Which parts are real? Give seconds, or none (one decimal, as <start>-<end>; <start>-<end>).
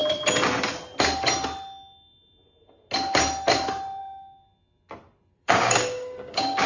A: 0.0-5.3